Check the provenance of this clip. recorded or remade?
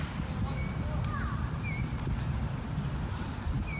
recorded